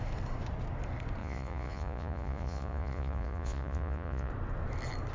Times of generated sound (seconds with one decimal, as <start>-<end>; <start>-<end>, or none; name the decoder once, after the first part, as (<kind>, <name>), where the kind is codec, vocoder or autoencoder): 1.2-4.3 (vocoder, Vocos)